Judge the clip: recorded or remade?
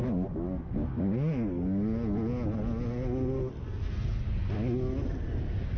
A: recorded